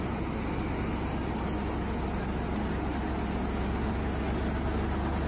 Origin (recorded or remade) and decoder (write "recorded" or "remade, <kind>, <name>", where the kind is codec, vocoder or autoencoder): recorded